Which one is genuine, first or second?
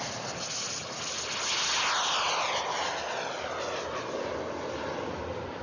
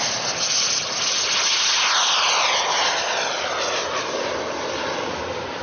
first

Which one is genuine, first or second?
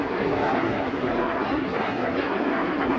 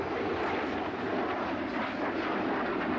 second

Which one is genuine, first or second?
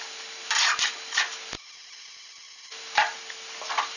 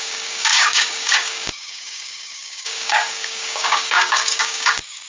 first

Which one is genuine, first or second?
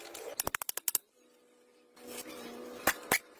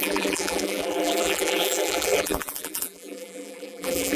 first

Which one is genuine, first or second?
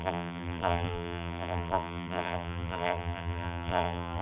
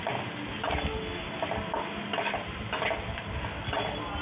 second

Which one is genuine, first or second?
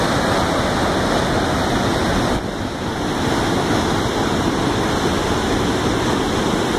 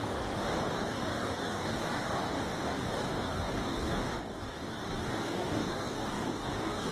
first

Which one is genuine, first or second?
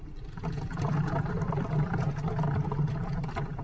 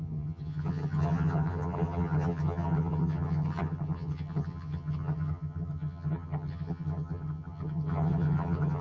first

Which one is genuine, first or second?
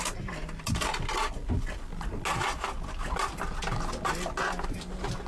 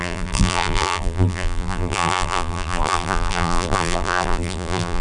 first